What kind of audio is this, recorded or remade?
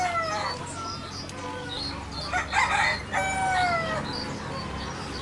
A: recorded